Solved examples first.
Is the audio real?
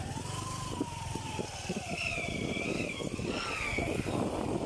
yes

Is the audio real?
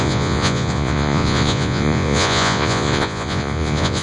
no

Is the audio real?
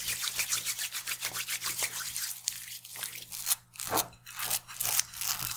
yes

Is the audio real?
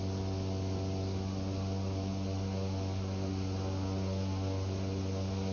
yes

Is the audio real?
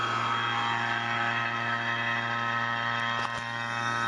yes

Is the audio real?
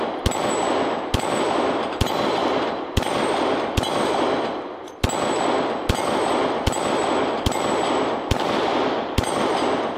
yes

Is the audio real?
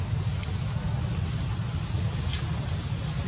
yes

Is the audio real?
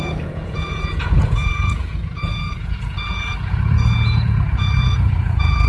no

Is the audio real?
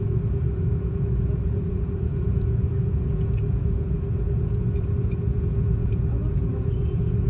no